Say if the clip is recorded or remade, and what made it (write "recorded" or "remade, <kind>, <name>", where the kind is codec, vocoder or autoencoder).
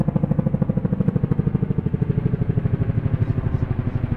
recorded